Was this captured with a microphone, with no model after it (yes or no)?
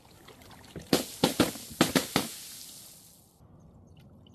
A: yes